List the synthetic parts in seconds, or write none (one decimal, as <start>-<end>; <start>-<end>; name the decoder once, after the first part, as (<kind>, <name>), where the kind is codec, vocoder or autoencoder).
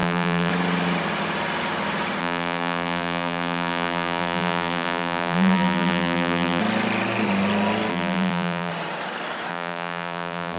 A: 0.0-0.5 (vocoder, BigVGAN v2); 2.2-6.6; 7.9-8.7; 9.5-10.6